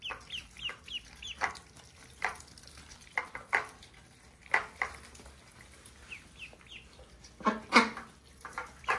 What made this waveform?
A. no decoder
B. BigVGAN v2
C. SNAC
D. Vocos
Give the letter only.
A